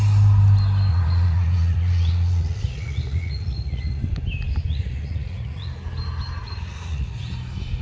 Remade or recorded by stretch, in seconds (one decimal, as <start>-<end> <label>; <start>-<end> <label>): 0.0-0.9 recorded; 0.9-4.0 remade; 4.0-4.6 recorded; 4.6-5.7 remade; 5.7-6.4 recorded; 6.4-7.3 remade; 7.3-7.8 recorded